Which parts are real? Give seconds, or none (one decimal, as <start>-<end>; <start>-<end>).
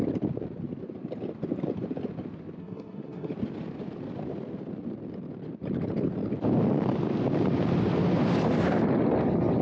0.0-2.6; 3.3-9.6